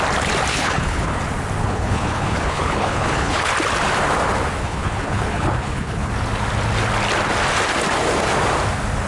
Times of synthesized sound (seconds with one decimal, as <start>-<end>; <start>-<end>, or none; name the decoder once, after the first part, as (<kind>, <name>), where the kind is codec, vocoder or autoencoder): 0.5-1.2 (codec, HILCodec); 1.6-3.5; 4.6-6.1